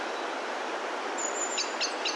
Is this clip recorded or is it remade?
recorded